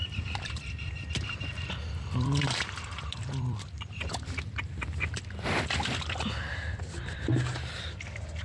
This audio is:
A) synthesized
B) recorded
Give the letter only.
A